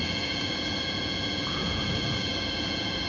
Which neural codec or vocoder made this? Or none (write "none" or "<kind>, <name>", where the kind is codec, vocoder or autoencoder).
vocoder, Vocos